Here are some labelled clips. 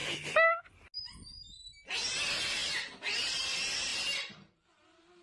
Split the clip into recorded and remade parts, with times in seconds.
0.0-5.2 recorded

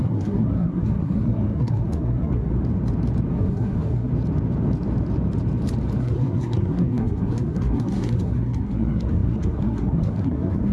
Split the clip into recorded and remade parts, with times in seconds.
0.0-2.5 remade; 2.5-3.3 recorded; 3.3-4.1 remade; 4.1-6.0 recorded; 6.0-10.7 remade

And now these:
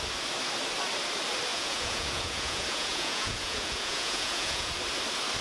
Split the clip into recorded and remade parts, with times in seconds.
0.0-1.5 recorded; 1.5-4.7 remade; 4.7-5.4 recorded